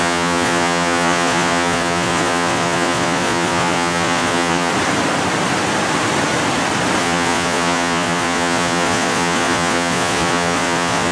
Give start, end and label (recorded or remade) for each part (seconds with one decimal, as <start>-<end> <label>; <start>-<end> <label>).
0.0-4.7 remade; 4.7-7.0 recorded; 7.0-11.1 remade